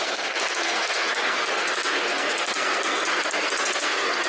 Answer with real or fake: fake